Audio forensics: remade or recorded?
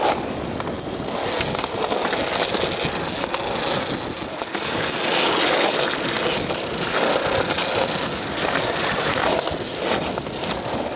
recorded